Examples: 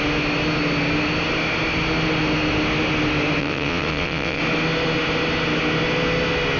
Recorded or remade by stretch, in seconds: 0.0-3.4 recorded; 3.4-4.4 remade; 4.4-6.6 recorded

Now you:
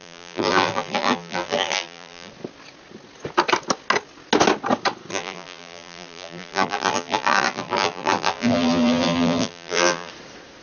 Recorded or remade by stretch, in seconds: 0.0-2.3 remade; 2.3-5.1 recorded; 5.1-10.1 remade; 10.1-10.6 recorded

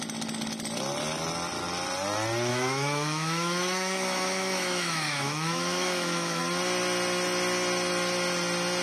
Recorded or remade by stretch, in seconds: 0.0-2.5 recorded; 2.5-6.4 remade; 6.4-8.8 recorded

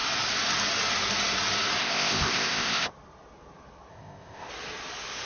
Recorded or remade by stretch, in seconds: 0.0-1.8 recorded; 1.8-2.9 remade; 2.9-3.9 recorded; 3.9-4.5 remade; 4.5-5.3 recorded

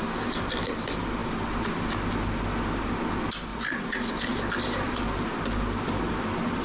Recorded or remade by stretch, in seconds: 0.0-3.5 recorded; 3.5-4.1 remade; 4.1-6.6 recorded